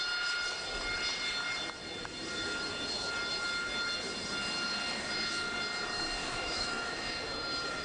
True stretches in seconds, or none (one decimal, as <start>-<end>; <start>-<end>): 0.0-6.2; 6.9-7.8